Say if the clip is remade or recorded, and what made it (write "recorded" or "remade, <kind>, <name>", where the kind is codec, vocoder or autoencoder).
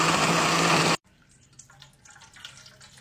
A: recorded